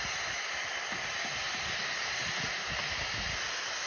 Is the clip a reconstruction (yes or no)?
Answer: no